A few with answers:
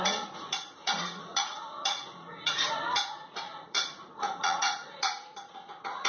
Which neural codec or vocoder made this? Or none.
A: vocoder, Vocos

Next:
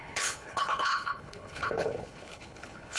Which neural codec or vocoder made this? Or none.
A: codec, HILCodec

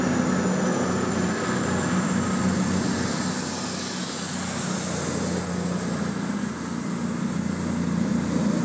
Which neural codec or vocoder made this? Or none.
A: none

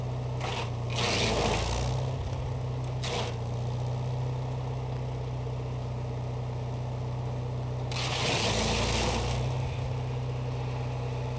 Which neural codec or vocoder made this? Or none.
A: none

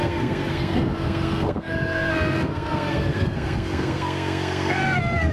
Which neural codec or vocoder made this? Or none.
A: codec, SNAC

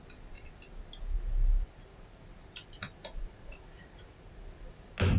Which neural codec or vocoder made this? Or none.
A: none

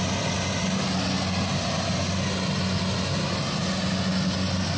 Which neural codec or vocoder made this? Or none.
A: none